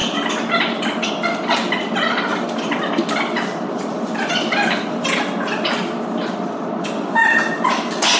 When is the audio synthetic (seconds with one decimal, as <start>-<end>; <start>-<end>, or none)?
0.0-1.1; 2.3-4.8